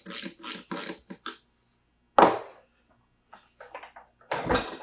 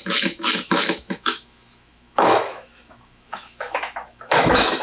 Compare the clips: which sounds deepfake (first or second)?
second